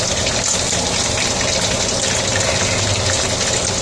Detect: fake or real real